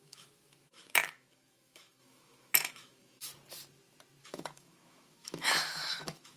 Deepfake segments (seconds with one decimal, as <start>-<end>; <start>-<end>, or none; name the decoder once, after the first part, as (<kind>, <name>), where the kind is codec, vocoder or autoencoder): 0.0-3.3 (autoencoder, DAC-VAE); 4.2-6.4